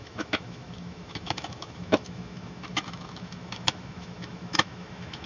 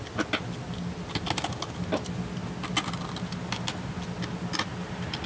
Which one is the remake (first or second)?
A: first